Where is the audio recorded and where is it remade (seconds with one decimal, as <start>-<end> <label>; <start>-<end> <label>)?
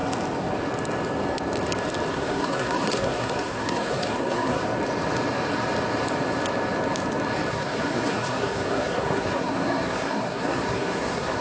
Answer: 0.0-2.1 recorded; 2.1-4.6 remade; 4.6-7.5 recorded; 7.5-11.4 remade